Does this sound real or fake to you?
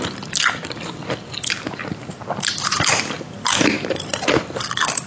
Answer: real